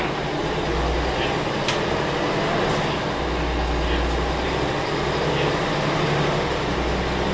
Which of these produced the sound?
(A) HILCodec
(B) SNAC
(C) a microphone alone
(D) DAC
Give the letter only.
C